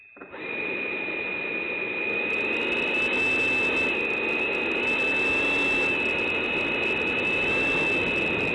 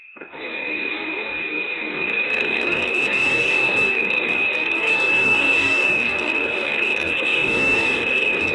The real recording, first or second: first